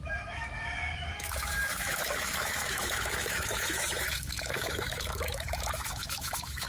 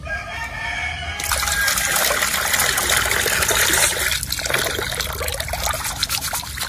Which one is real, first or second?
second